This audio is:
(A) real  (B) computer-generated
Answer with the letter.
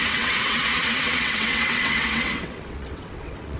B